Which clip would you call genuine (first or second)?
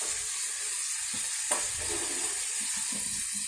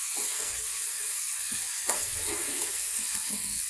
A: first